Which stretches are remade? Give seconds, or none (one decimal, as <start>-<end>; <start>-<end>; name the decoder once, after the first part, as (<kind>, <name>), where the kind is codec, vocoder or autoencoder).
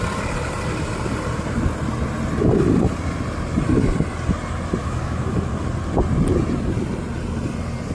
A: 4.8-5.5 (autoencoder, DAC-VAE)